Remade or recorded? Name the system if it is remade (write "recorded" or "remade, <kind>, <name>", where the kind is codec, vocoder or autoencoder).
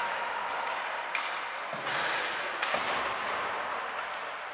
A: recorded